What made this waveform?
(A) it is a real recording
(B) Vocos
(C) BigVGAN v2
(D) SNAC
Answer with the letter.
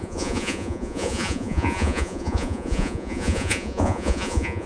B